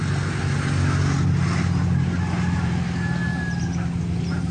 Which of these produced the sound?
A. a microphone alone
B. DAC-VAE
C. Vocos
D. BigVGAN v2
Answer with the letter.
A